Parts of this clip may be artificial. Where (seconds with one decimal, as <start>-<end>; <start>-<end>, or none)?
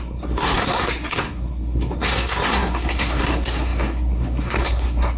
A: 0.0-5.2